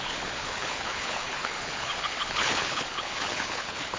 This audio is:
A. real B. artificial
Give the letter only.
B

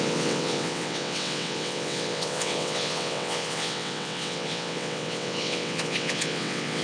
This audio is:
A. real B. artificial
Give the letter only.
B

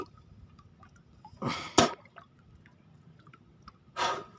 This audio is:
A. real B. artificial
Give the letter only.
A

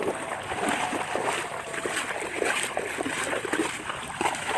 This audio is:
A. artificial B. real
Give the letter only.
B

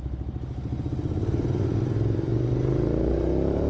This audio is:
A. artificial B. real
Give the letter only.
A